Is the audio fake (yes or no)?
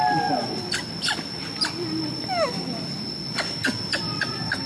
no